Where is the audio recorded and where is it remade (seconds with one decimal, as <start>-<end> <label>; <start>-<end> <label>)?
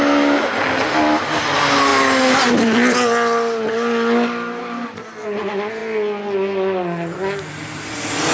0.0-8.3 recorded